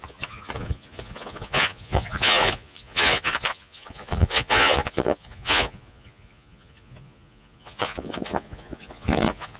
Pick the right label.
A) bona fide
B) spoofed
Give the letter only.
B